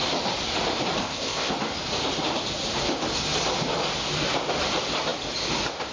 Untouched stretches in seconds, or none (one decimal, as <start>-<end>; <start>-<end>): 0.0-1.0; 1.5-5.9